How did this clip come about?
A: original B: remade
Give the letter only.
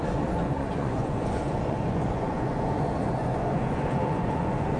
B